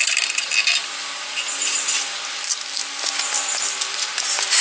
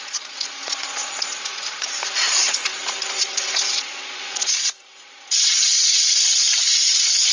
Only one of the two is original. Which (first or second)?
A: first